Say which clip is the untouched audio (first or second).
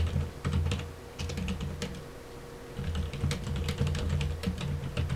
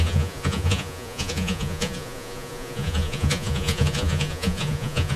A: first